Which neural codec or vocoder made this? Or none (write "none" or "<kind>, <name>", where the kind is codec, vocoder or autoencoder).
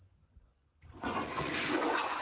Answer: vocoder, Vocos